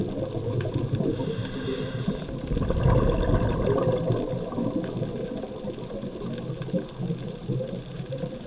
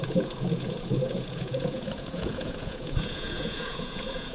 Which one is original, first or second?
first